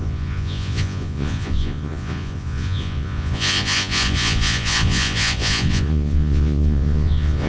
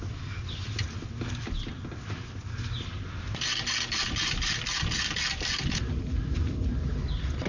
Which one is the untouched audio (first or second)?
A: second